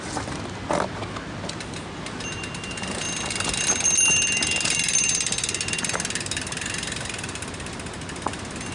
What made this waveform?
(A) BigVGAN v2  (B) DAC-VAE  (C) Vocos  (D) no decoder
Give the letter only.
D